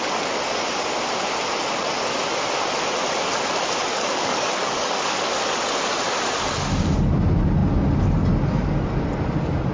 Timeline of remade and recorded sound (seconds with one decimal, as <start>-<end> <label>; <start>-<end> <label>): 0.0-3.9 recorded; 3.9-5.3 remade; 5.3-9.7 recorded

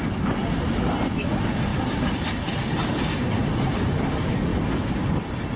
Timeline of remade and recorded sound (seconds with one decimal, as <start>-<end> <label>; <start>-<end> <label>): 0.0-0.4 recorded; 0.4-1.1 remade; 1.1-1.7 recorded; 1.7-2.5 remade; 2.5-5.6 recorded

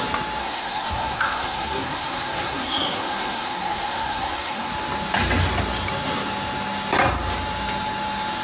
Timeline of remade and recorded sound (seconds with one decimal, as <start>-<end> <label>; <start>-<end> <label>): 0.0-0.4 recorded; 0.4-4.7 remade; 4.7-8.4 recorded

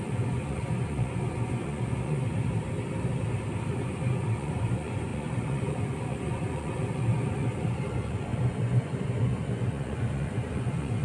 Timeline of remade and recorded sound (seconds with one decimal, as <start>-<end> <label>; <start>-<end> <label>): 0.0-2.2 remade; 2.2-3.7 recorded; 3.7-11.0 remade

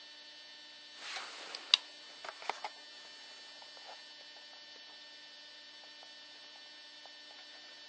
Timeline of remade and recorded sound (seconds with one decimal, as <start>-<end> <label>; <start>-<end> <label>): 0.0-7.9 recorded

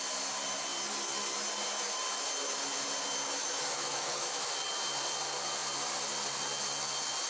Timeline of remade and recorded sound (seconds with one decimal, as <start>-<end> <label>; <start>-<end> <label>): 0.0-3.4 recorded; 3.4-4.5 remade; 4.5-7.3 recorded

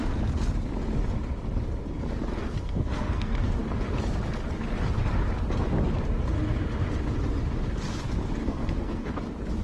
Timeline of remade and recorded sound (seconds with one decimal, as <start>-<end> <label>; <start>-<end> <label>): 0.0-2.4 recorded; 2.4-3.6 remade; 3.6-8.4 recorded; 8.4-9.1 remade; 9.1-9.6 recorded